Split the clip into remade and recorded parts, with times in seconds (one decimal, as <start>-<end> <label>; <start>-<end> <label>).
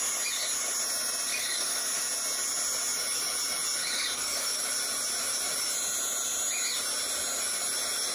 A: 0.0-1.3 recorded; 1.3-2.0 remade; 2.0-3.8 recorded; 3.8-4.7 remade; 4.7-8.1 recorded